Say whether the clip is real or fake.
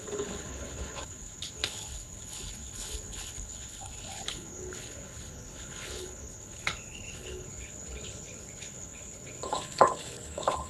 fake